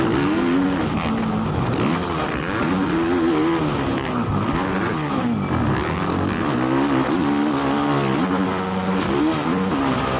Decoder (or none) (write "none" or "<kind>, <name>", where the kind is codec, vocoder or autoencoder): none